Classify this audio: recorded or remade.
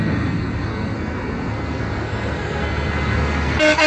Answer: remade